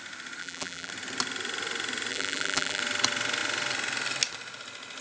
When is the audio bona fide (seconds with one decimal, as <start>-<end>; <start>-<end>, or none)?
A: 0.0-0.4; 0.9-2.1; 2.8-5.0